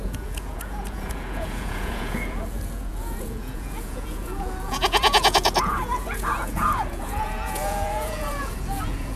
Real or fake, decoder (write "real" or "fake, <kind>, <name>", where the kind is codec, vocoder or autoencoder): fake, vocoder, Vocos